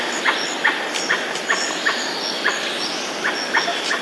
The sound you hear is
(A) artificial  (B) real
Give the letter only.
B